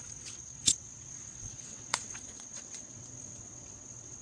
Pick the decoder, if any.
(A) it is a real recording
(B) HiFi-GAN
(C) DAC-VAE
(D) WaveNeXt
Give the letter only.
D